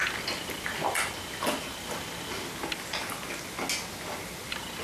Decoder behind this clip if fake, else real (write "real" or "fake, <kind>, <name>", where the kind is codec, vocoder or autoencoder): real